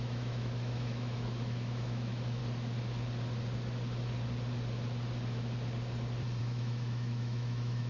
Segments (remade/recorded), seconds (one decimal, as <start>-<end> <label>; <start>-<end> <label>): 0.0-2.4 remade; 2.4-6.4 recorded; 6.4-7.9 remade